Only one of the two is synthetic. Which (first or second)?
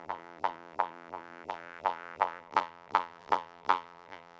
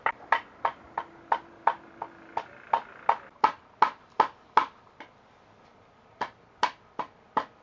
first